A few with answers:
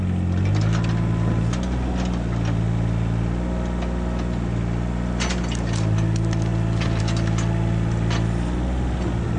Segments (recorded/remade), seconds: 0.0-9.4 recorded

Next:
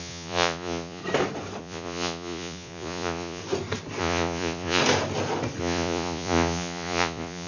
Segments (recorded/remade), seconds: 0.0-1.0 remade; 1.0-1.6 recorded; 1.6-3.4 remade; 3.4-4.0 recorded; 4.0-4.8 remade; 4.8-5.6 recorded; 5.6-7.5 remade